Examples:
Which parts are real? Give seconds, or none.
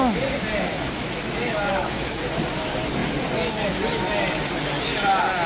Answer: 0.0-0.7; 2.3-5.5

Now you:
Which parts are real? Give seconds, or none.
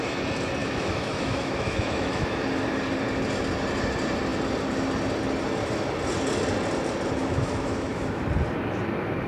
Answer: 0.0-0.6; 2.4-7.2; 8.2-9.3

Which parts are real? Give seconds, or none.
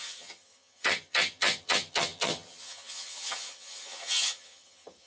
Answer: none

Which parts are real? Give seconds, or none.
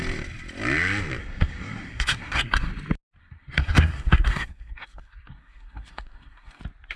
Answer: 0.0-1.2; 2.7-3.2; 6.6-7.0